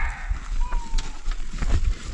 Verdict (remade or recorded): recorded